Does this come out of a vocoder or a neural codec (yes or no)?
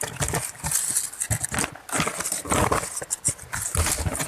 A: no